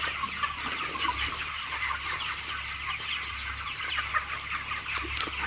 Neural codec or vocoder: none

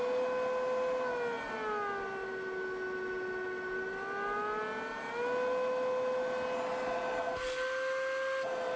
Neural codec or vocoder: none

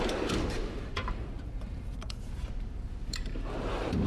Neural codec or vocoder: vocoder, BigVGAN v2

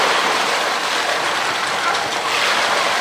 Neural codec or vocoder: none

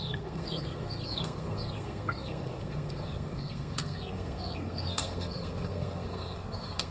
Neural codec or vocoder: codec, SNAC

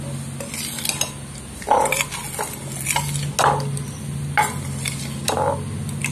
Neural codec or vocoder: none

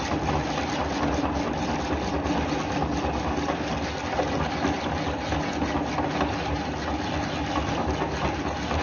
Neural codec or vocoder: none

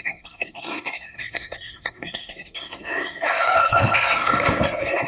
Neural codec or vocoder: codec, SNAC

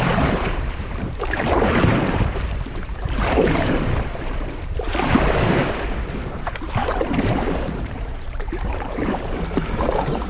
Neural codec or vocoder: vocoder, BigVGAN v2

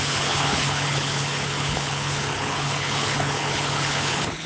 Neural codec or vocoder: codec, HILCodec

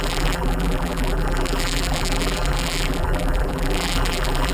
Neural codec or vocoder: vocoder, BigVGAN v2